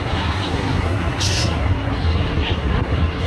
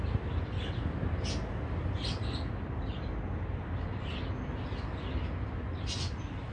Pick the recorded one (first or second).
second